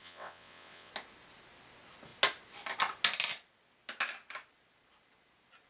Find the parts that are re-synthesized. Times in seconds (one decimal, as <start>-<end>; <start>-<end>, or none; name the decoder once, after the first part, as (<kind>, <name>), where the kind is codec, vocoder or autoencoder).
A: 0.0-0.9 (vocoder, WaveNeXt)